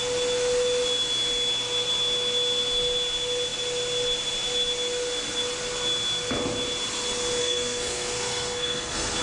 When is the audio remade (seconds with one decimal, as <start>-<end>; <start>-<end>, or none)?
7.4-9.2